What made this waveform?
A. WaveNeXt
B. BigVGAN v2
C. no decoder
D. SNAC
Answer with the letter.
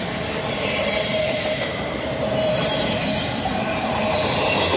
B